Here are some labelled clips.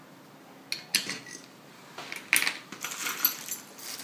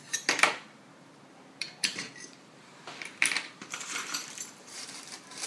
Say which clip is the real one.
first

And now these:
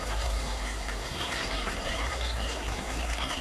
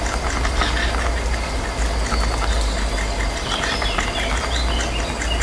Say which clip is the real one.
second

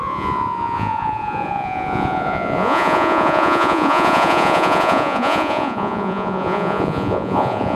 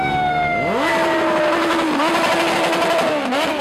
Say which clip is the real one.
second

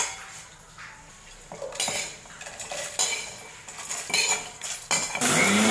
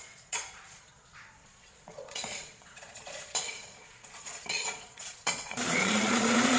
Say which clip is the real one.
first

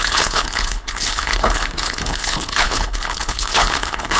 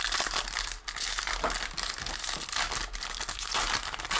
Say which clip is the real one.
second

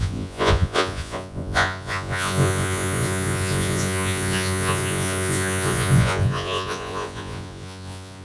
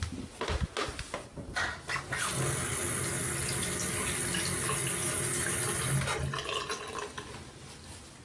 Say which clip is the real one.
second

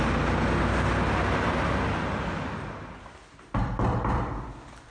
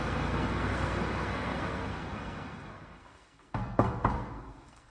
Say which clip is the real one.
first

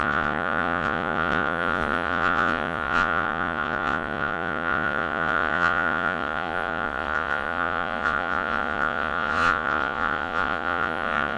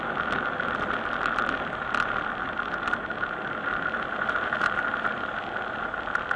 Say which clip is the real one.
second